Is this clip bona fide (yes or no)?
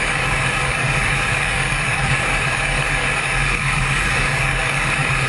no